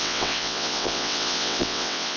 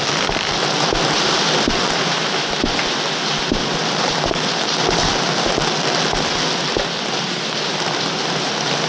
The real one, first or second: second